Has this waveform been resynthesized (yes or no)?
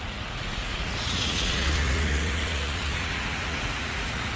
yes